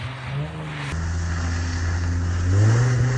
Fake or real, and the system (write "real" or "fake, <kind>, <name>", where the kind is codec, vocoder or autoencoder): real